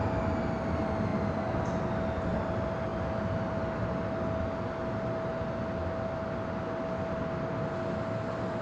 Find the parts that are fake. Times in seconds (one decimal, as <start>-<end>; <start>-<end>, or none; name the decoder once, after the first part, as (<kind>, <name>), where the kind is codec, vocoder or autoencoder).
none